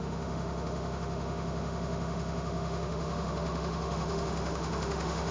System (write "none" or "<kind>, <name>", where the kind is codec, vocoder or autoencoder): autoencoder, DAC-VAE